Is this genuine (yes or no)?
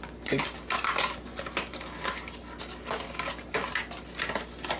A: yes